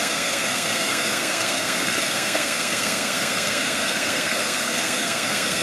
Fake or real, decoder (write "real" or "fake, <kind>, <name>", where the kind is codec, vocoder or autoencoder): fake, codec, SNAC